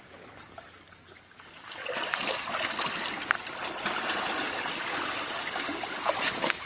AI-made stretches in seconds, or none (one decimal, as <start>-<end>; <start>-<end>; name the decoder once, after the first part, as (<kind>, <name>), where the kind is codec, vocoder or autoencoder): 0.0-1.8 (codec, DAC); 4.8-6.7